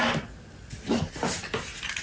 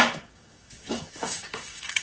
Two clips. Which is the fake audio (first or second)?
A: second